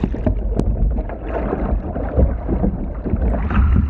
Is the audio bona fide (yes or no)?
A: yes